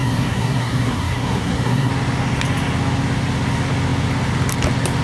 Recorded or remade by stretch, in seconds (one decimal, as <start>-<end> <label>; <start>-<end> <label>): 0.0-1.9 remade; 1.9-5.0 recorded